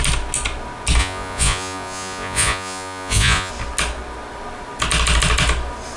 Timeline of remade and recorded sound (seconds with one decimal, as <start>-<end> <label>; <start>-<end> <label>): 0.0-1.0 recorded; 1.0-3.5 remade; 3.5-6.0 recorded